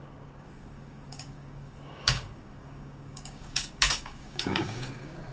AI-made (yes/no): yes